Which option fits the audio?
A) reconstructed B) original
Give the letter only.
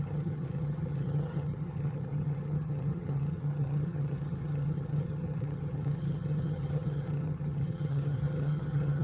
A